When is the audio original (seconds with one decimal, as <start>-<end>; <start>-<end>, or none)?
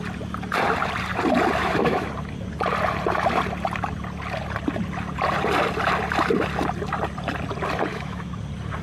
0.0-1.6; 2.1-7.9; 8.4-8.8